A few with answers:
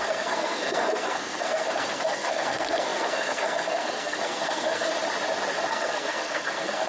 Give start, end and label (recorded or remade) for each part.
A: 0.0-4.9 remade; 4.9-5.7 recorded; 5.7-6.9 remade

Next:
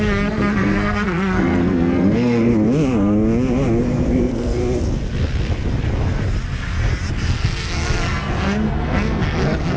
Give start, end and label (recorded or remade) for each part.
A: 0.0-2.5 remade; 2.5-3.8 recorded; 3.8-4.6 remade; 4.6-7.1 recorded; 7.1-9.8 remade

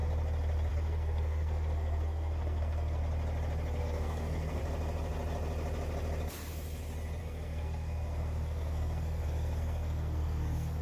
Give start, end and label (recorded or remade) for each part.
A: 0.0-0.7 recorded; 0.7-3.0 remade; 3.0-3.8 recorded; 3.8-4.6 remade; 4.6-7.2 recorded; 7.2-10.8 remade

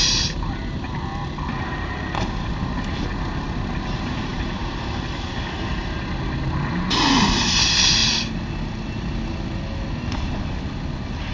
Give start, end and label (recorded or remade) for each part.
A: 0.0-11.3 recorded

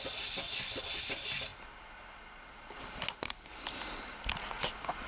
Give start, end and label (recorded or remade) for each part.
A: 0.0-5.1 recorded

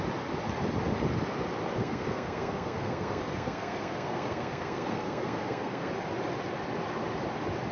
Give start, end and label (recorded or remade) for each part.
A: 0.0-1.8 recorded; 1.8-5.9 remade; 5.9-7.7 recorded

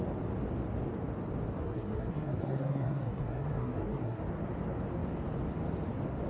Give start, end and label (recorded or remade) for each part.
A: 0.0-1.6 recorded; 1.6-4.2 remade; 4.2-6.3 recorded